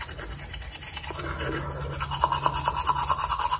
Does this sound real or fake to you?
real